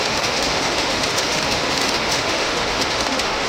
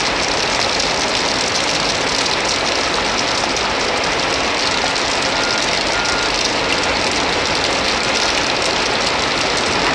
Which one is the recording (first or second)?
second